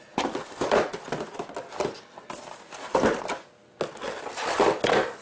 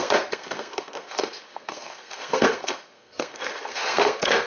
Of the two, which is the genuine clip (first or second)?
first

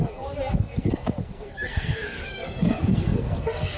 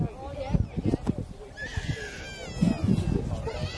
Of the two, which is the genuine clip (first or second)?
second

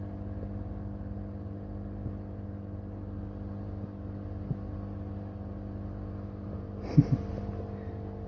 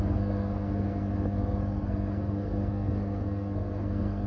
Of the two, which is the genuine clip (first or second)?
first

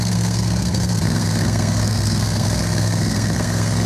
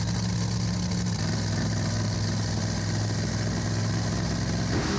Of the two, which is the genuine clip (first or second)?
second